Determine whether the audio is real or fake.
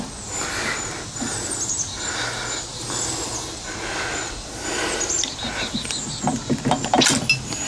real